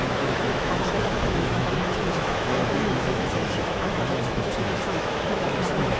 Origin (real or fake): fake